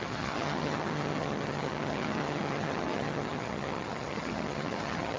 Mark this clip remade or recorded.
remade